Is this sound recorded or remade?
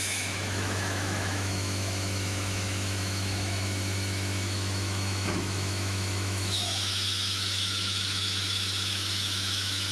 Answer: remade